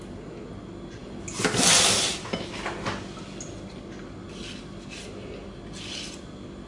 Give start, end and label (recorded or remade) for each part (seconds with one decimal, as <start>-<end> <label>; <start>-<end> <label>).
0.0-6.7 recorded